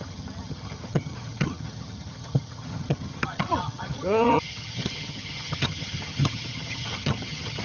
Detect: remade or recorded remade